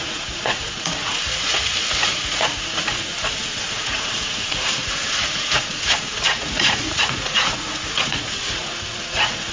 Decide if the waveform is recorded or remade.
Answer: remade